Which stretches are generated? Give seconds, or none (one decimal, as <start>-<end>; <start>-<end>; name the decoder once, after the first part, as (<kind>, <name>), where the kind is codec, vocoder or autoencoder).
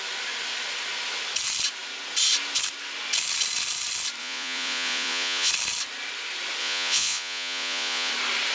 4.2-5.5 (vocoder, Vocos); 6.6-8.1